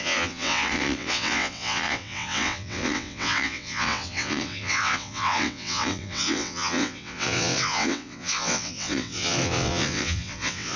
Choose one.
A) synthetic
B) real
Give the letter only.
A